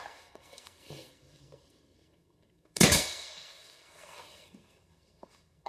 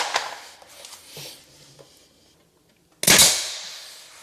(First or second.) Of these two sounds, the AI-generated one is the first